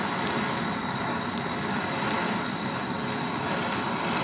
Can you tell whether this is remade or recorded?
recorded